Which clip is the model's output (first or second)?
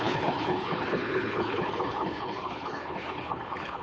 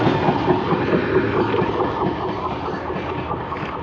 first